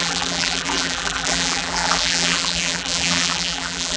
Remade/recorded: remade